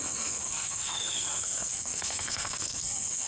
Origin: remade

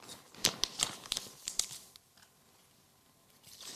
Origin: recorded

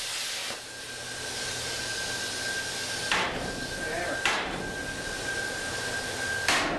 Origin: recorded